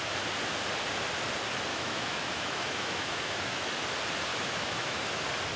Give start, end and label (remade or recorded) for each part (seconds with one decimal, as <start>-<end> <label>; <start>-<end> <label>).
0.0-1.7 recorded; 1.7-3.7 remade; 3.7-4.3 recorded; 4.3-5.1 remade; 5.1-5.6 recorded